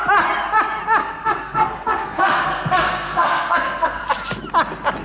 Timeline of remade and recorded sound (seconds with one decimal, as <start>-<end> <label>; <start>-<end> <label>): 0.0-1.0 recorded; 1.0-4.0 remade; 4.0-5.0 recorded